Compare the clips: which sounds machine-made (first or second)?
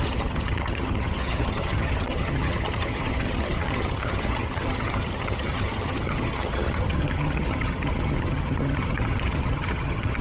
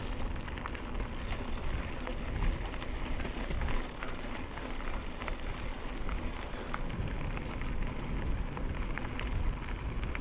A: first